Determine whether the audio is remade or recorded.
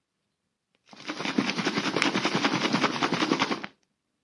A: remade